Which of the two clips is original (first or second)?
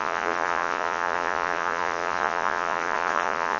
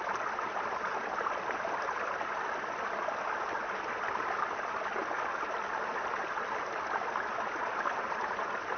second